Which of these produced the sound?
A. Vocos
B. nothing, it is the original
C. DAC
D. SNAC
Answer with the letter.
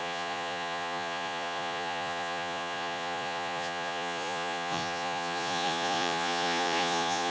A